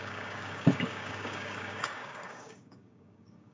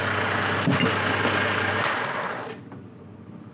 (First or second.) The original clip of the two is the second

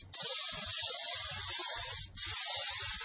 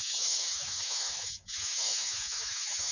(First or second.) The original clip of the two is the first